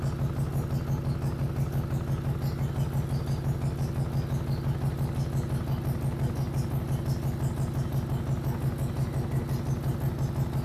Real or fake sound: real